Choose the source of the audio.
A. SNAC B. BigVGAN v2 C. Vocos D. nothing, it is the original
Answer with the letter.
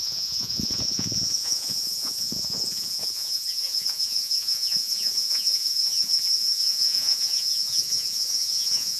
C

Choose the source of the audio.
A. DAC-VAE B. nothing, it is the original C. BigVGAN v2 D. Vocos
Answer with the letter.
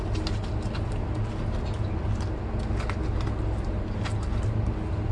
B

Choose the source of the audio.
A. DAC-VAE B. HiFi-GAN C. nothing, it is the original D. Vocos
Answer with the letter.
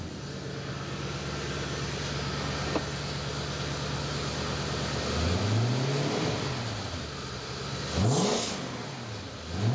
C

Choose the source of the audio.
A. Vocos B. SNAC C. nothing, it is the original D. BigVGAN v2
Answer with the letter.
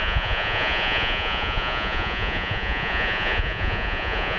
A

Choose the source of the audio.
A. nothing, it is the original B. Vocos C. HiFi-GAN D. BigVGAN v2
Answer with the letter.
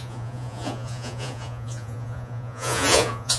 B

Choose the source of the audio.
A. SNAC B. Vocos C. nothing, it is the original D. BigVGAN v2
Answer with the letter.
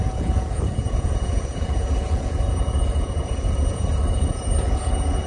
B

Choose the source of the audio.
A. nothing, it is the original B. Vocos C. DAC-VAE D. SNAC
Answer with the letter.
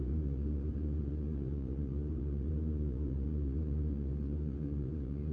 B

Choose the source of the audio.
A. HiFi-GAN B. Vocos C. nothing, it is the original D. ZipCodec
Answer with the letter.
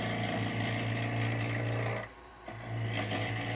C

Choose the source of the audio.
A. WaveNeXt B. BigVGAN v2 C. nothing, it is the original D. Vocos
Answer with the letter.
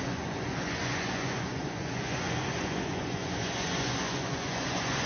D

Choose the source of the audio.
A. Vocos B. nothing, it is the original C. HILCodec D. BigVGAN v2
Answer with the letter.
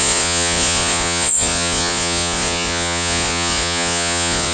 A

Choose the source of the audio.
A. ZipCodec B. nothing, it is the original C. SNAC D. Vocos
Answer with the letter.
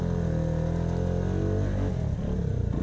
B